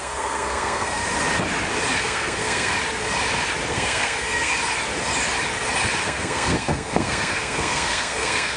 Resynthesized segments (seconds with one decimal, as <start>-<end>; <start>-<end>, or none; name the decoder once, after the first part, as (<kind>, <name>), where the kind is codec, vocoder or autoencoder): 0.0-1.0 (codec, SNAC); 2.0-2.7; 3.7-4.5; 6.0-8.6